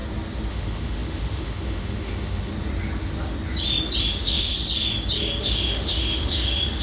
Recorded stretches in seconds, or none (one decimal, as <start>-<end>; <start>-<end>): 0.0-0.5; 2.5-4.1; 4.5-5.4